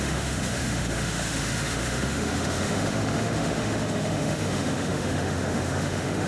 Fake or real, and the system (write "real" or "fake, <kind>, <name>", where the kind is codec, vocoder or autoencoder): fake, autoencoder, DAC-VAE